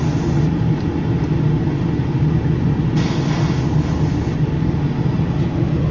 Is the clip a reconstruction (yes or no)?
no